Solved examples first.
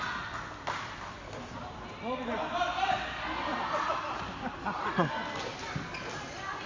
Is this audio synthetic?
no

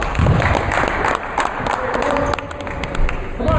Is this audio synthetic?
no